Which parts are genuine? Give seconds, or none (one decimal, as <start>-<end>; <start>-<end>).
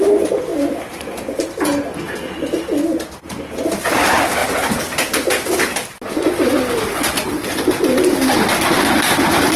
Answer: 0.0-9.6